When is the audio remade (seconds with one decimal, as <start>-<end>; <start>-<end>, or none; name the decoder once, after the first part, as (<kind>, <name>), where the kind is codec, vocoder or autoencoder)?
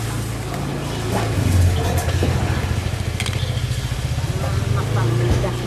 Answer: none